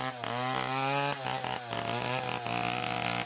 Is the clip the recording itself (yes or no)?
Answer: yes